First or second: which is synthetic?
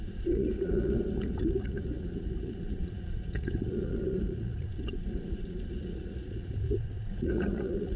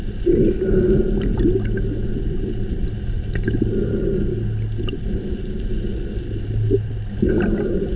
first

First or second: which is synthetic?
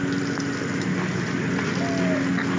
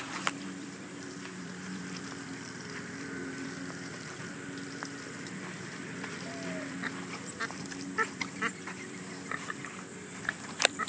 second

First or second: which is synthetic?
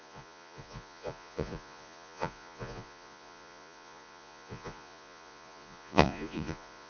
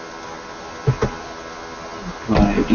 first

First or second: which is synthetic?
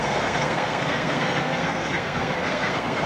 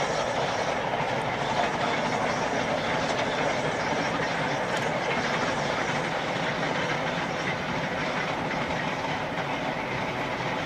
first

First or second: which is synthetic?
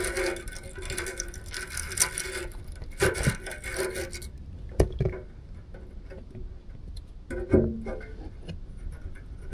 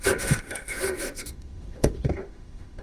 second